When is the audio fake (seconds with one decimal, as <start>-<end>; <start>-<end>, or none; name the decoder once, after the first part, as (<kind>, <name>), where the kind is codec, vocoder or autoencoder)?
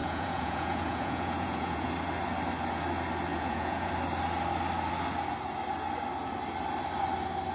0.0-1.9 (vocoder, Vocos); 3.3-3.9